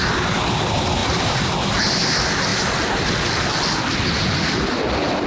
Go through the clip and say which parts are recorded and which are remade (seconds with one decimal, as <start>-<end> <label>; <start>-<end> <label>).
0.0-1.0 recorded; 1.0-1.7 remade; 1.7-5.3 recorded

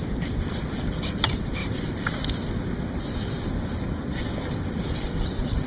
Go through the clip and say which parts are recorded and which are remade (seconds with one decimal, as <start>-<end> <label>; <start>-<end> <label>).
0.0-1.6 remade; 1.6-4.2 recorded; 4.2-5.7 remade

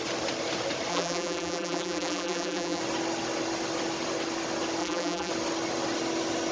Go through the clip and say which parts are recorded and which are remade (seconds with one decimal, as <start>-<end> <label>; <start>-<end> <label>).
0.0-0.9 recorded; 0.9-2.8 remade; 2.8-4.8 recorded; 4.8-5.3 remade; 5.3-6.5 recorded

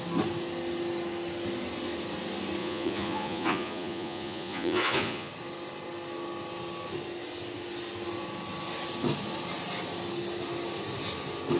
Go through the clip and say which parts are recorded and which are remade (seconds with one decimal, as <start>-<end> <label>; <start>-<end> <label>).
0.0-2.6 recorded; 2.6-5.3 remade; 5.3-11.6 recorded